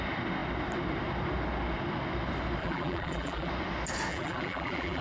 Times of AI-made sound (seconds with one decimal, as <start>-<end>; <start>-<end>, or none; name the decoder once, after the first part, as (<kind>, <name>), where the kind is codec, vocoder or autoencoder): 2.6-3.5 (vocoder, BigVGAN v2); 4.1-5.0